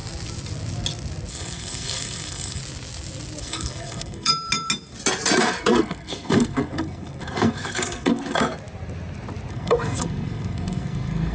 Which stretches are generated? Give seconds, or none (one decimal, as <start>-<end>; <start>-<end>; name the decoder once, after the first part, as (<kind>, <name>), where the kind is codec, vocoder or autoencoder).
1.3-2.6 (codec, SNAC); 3.4-4.3; 5.4-8.5; 9.5-11.3